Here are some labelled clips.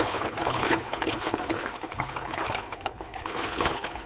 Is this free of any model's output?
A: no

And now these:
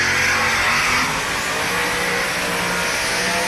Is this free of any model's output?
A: yes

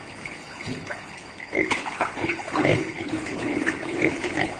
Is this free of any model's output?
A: no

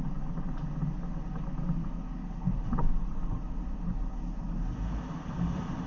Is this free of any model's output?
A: yes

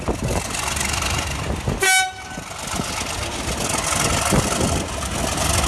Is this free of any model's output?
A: yes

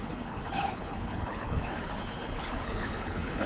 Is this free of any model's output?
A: no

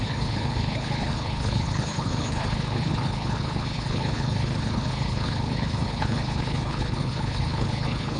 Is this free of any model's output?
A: no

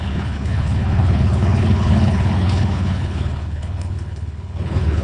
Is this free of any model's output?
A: no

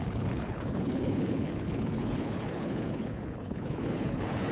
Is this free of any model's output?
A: no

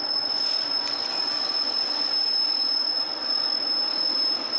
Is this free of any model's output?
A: yes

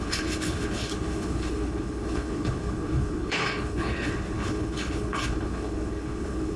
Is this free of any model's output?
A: no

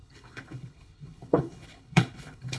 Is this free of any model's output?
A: no